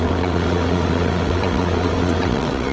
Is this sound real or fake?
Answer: fake